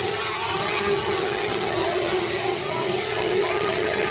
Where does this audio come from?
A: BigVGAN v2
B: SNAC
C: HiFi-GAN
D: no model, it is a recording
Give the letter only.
C